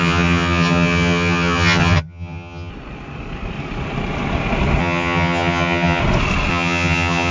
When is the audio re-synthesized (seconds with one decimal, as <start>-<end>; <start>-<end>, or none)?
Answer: 0.0-2.7; 4.8-6.0; 6.5-7.3